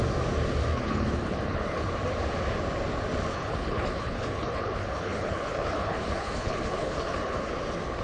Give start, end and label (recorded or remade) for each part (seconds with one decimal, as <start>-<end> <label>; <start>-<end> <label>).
0.0-0.7 recorded; 0.7-1.9 remade; 1.9-3.3 recorded; 3.3-7.4 remade; 7.4-8.0 recorded